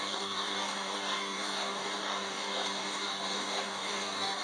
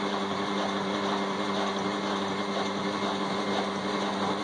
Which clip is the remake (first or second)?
first